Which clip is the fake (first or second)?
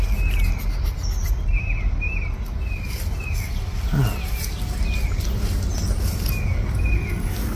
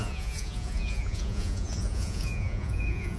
second